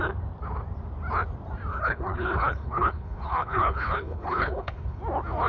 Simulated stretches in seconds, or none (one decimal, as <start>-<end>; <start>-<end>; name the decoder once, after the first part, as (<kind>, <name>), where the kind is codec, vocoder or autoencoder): 1.7-5.0 (codec, HILCodec)